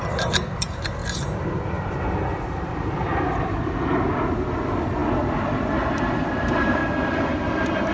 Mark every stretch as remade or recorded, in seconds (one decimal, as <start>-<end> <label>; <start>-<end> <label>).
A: 0.0-1.0 remade; 1.0-3.3 recorded; 3.3-6.8 remade; 6.8-7.4 recorded; 7.4-7.9 remade